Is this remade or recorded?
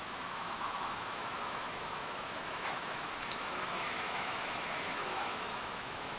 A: remade